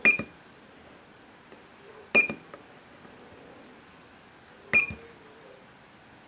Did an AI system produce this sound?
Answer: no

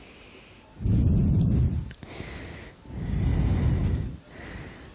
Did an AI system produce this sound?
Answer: no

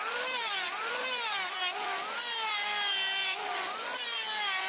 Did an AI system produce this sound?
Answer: no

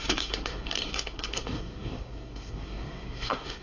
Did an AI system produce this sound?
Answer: yes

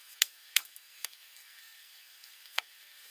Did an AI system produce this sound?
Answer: yes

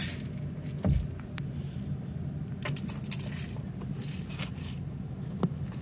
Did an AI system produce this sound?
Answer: no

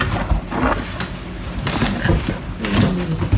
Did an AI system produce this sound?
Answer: no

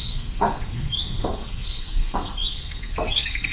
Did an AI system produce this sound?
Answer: yes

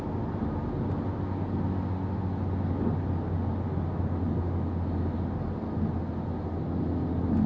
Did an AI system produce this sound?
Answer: no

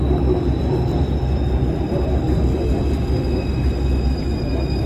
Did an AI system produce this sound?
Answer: no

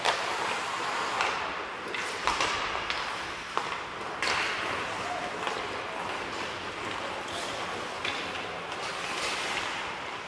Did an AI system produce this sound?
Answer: no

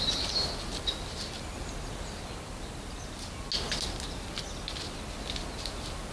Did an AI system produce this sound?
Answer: no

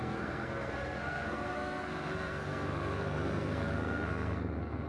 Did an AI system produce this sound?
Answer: yes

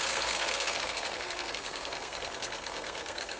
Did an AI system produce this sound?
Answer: yes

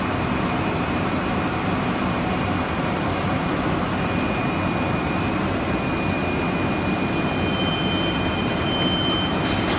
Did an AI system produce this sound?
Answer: no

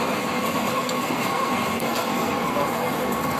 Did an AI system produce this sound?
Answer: yes